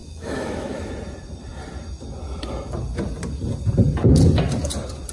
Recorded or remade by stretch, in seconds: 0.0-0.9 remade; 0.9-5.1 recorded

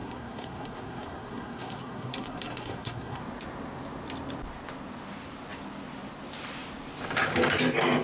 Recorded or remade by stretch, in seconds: 0.0-3.2 remade; 3.2-8.0 recorded

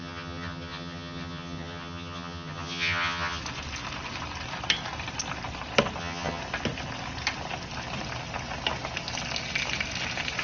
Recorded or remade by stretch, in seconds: 0.0-3.4 remade; 3.4-6.0 recorded; 6.0-6.4 remade; 6.4-10.4 recorded

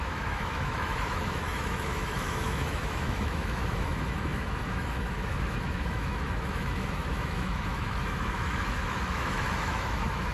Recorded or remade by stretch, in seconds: 0.0-10.3 remade

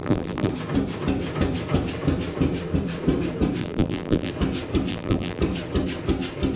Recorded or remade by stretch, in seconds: 0.0-0.5 remade; 0.5-3.6 recorded; 3.6-4.3 remade; 4.3-4.9 recorded; 4.9-5.4 remade; 5.4-6.6 recorded

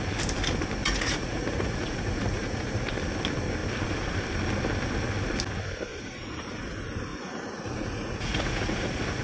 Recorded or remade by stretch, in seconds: 0.0-0.8 recorded; 0.8-2.8 remade; 2.8-5.9 recorded; 5.9-6.4 remade; 6.4-7.1 recorded; 7.1-9.2 remade